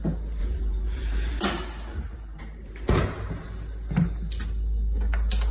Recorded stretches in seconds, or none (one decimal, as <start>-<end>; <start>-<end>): 0.0-0.4; 1.4-1.9; 3.0-5.5